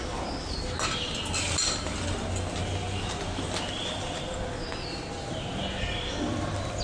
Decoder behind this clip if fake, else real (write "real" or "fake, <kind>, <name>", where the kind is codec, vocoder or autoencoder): real